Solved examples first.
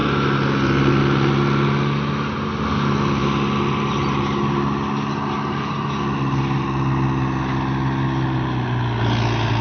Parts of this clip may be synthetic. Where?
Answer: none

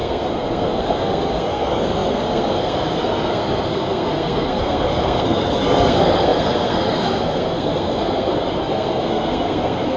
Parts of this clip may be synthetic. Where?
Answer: 0.0-10.0

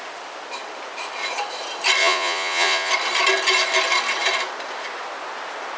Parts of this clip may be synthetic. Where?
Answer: 2.0-2.9

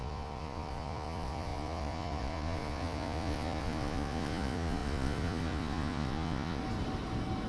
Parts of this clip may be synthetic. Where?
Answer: 0.0-6.6

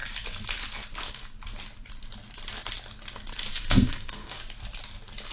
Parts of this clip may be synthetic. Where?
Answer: 3.5-4.4